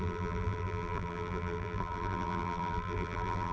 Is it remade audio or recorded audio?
remade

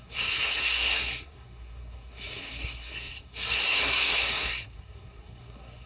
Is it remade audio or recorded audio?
remade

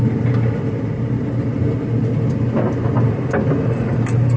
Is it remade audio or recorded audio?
recorded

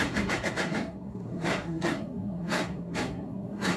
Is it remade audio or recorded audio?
remade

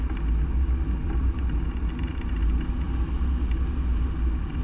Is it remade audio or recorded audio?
recorded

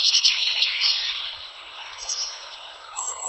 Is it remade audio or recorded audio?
remade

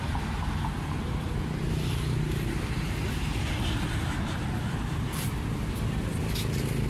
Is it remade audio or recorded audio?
recorded